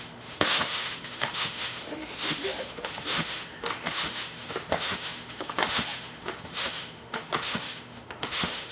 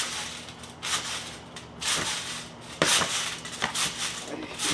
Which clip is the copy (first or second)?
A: first